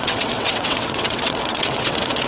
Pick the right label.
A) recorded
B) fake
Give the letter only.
B